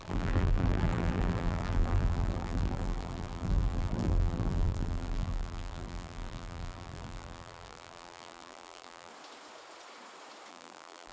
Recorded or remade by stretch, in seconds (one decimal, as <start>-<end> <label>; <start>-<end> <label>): 0.0-9.1 remade; 9.1-10.5 recorded; 10.5-11.1 remade